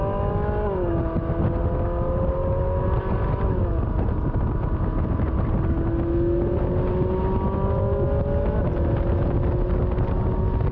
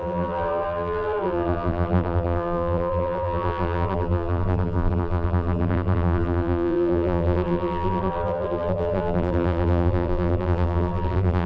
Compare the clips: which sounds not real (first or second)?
second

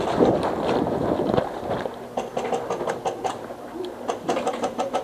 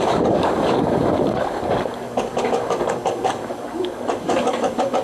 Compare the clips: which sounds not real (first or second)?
second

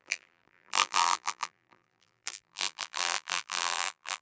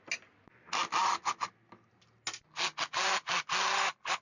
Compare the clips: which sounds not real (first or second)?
first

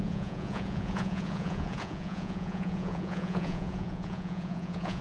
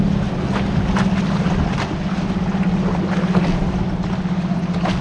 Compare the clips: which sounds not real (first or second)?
first